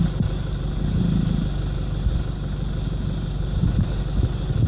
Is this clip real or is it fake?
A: real